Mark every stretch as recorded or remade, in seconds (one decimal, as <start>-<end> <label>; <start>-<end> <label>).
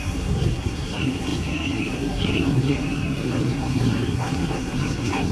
0.0-5.3 remade